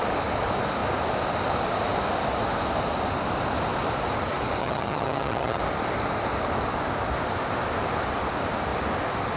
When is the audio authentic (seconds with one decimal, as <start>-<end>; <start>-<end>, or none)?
0.0-4.6; 5.6-9.4